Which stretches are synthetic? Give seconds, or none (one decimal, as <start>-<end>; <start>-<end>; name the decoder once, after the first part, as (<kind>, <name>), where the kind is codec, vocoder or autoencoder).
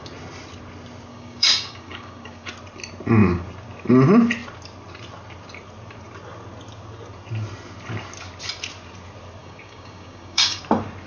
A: 1.1-2.5 (codec, DAC); 9.4-10.6